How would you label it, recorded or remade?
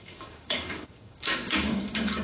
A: remade